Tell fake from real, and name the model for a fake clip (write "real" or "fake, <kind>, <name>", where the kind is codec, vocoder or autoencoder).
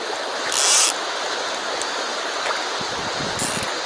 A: real